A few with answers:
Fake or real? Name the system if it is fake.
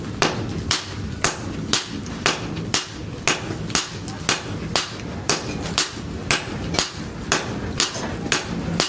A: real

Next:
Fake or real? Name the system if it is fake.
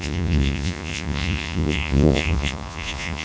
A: fake, vocoder, Vocos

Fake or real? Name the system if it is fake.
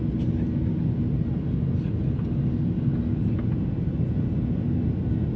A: real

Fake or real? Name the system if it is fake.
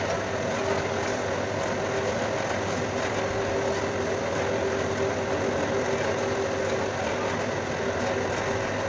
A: real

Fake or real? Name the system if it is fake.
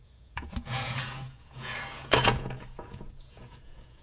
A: fake, vocoder, Vocos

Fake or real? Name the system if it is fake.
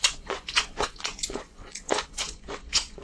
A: fake, vocoder, Vocos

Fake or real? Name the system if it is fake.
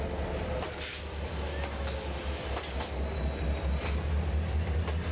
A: real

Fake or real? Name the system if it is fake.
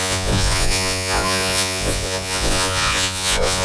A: fake, vocoder, Vocos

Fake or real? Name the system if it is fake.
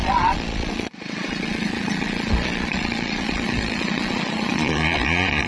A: fake, vocoder, Vocos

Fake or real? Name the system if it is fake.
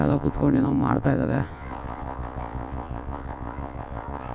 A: fake, vocoder, Vocos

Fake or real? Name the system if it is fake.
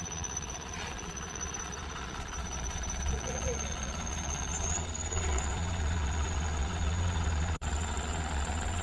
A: fake, vocoder, Vocos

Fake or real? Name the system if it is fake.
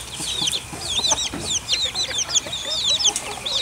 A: real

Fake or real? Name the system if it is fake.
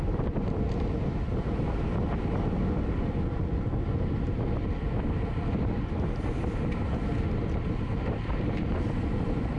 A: real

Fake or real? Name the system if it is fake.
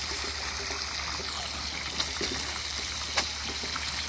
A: real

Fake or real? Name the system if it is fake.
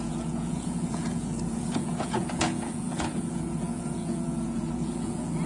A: fake, vocoder, Vocos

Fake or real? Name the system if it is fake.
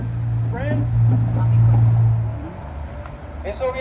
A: real